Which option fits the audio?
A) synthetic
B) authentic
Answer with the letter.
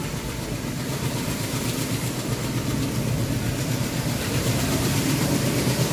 A